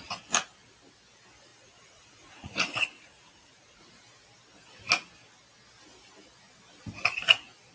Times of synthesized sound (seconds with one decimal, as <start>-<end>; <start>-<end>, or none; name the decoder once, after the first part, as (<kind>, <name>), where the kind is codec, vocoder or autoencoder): 1.5-3.9 (vocoder, Vocos)